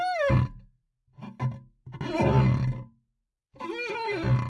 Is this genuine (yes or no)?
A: yes